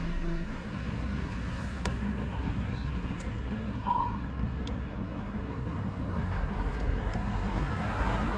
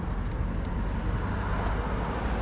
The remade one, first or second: first